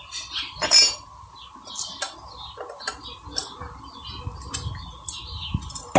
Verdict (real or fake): real